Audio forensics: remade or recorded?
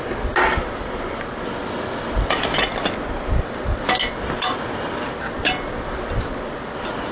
recorded